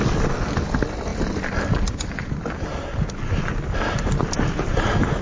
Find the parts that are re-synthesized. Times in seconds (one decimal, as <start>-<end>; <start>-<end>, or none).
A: none